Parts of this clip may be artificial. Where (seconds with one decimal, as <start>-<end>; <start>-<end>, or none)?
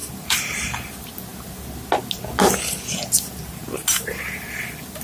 0.0-0.9